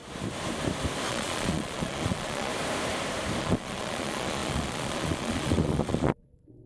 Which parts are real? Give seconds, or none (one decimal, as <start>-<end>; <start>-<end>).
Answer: 0.0-1.1; 2.5-3.4